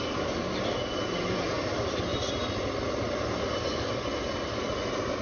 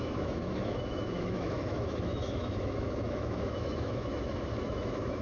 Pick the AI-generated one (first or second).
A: second